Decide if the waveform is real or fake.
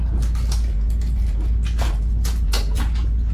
real